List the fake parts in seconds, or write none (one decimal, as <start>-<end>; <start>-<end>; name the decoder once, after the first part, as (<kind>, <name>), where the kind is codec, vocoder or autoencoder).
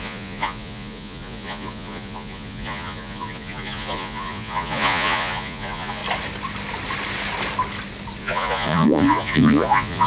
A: 0.0-6.0 (vocoder, Vocos); 8.2-10.1